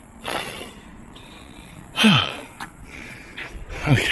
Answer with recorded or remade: remade